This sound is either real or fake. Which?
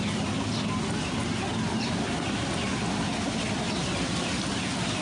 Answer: real